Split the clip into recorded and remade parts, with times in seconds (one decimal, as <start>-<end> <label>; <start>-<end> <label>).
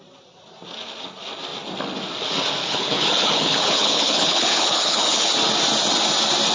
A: 0.0-2.6 recorded; 2.6-5.3 remade; 5.3-6.5 recorded